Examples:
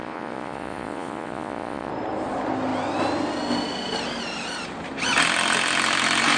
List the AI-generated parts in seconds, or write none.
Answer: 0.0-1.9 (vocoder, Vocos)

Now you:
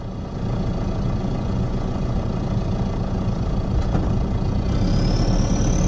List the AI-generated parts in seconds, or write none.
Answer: 1.2-2.2 (vocoder, Vocos)

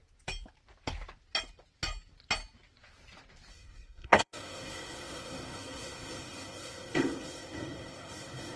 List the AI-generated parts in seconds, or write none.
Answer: 3.5-8.6 (codec, SNAC)

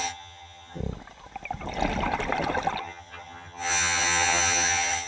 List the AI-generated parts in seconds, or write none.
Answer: 0.0-0.8 (vocoder, HiFi-GAN); 2.8-5.1

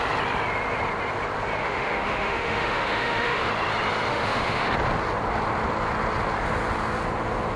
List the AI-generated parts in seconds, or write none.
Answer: 1.6-3.5 (autoencoder, DAC-VAE); 4.1-4.7